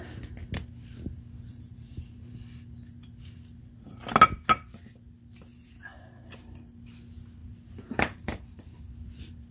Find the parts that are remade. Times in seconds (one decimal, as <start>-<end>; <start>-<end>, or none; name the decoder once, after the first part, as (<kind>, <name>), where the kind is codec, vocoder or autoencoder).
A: 1.5-2.3 (vocoder, BigVGAN v2); 5.5-6.6; 7.4-8.8

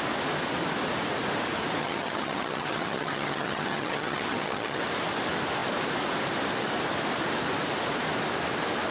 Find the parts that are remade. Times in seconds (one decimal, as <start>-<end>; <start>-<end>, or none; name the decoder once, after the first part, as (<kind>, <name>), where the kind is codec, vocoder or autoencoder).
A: 1.8-4.8 (vocoder, HiFi-GAN)

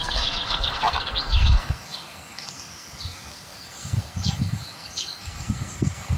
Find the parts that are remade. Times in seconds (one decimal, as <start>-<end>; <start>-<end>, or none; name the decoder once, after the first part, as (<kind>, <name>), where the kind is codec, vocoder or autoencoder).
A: 0.0-6.2 (codec, SNAC)

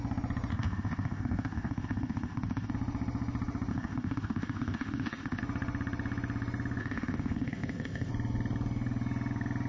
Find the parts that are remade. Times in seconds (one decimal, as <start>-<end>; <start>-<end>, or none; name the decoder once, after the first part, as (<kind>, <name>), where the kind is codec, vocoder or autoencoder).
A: 0.5-2.7 (codec, ZipCodec); 3.7-5.4; 6.8-8.1